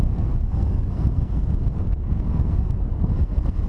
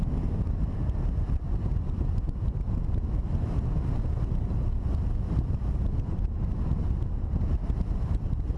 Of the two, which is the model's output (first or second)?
first